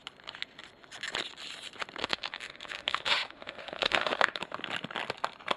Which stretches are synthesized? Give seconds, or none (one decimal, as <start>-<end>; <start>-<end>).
2.0-4.4